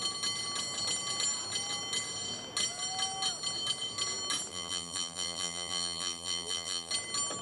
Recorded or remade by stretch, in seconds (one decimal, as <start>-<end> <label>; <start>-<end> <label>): 0.0-4.5 recorded; 4.5-6.9 remade; 6.9-7.4 recorded

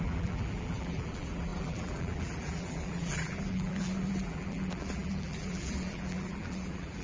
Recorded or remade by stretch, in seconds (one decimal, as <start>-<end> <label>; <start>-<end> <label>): 0.0-7.0 remade

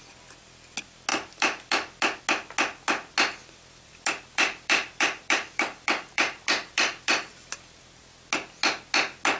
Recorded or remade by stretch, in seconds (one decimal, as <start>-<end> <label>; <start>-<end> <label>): 0.0-1.1 recorded; 1.1-2.2 remade; 2.2-3.4 recorded; 3.4-7.8 remade; 7.8-9.4 recorded

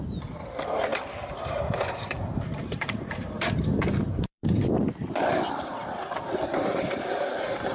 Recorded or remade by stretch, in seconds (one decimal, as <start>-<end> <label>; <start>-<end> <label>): 0.0-0.9 recorded; 0.9-4.6 remade; 4.6-7.7 recorded

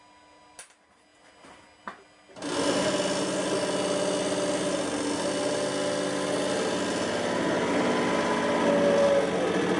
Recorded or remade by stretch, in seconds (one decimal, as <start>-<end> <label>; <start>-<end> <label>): 0.0-9.8 recorded